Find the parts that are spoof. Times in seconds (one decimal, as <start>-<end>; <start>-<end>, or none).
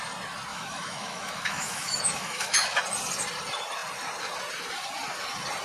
0.5-2.8